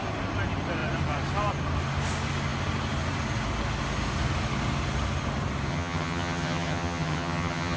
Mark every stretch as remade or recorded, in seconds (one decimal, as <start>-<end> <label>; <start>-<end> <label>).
0.0-5.7 recorded; 5.7-7.8 remade